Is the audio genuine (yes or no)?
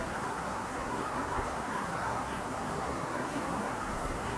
no